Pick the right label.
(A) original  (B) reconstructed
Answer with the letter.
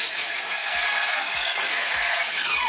B